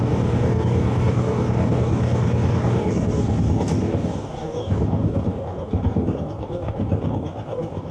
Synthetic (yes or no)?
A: yes